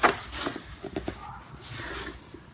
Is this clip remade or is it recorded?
recorded